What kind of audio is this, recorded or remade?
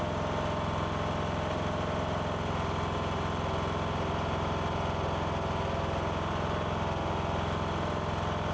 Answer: recorded